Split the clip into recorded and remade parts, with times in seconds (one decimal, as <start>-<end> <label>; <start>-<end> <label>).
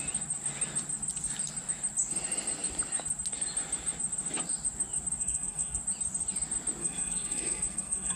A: 0.0-5.2 recorded; 5.2-5.8 remade; 5.8-6.8 recorded; 6.8-8.2 remade